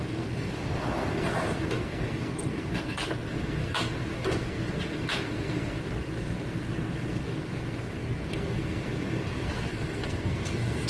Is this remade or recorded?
remade